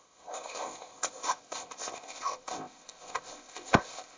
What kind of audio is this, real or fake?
fake